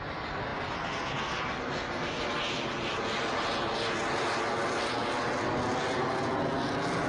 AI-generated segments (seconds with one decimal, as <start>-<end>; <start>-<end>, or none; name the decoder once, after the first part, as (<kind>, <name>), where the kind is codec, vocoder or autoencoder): none